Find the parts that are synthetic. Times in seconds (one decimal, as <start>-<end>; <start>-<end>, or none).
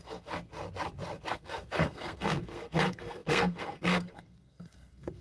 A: 0.0-0.5; 1.3-5.2